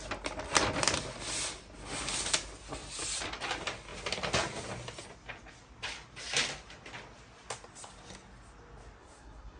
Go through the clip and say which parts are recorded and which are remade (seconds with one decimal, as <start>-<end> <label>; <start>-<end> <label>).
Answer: 0.0-9.0 recorded; 9.0-9.6 remade